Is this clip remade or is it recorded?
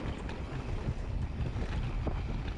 recorded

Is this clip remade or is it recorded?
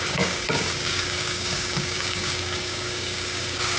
remade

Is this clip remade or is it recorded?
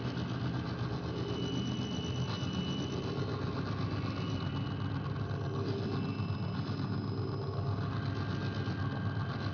recorded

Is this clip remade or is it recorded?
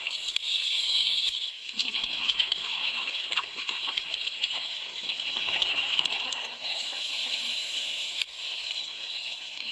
remade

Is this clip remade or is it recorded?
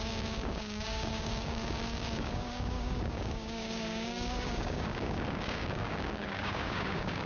remade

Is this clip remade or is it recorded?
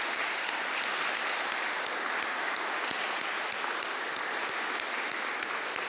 recorded